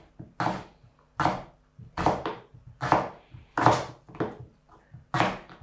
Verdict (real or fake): real